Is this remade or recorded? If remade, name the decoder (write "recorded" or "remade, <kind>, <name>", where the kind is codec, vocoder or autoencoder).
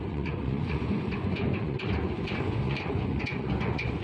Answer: remade, vocoder, Vocos